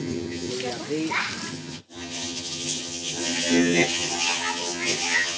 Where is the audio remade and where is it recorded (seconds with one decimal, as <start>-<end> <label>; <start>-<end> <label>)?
0.0-0.5 remade; 0.5-1.5 recorded; 1.5-5.4 remade